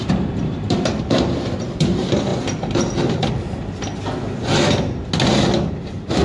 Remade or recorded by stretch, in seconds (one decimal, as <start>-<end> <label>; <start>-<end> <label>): 0.0-2.3 remade; 2.3-5.7 recorded; 5.7-6.2 remade